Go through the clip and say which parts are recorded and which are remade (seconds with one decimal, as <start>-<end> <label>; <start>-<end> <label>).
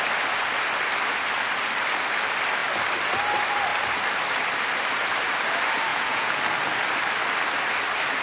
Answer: 0.0-5.9 recorded; 5.9-6.4 remade; 6.4-8.2 recorded